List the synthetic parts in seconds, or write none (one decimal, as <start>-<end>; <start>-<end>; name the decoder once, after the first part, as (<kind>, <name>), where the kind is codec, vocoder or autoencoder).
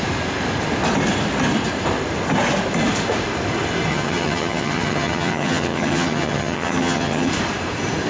3.9-7.3 (vocoder, HiFi-GAN)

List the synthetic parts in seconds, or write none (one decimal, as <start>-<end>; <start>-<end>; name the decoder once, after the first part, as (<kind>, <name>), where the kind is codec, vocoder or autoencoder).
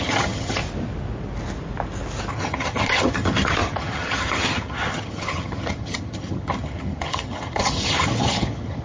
0.0-0.6 (vocoder, HiFi-GAN); 2.3-8.8